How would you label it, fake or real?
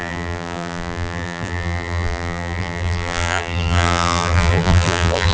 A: fake